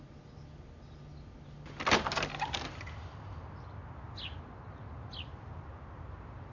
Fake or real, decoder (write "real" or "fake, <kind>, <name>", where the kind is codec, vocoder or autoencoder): real